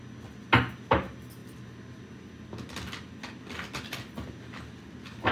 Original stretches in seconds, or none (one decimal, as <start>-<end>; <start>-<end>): 0.0-5.3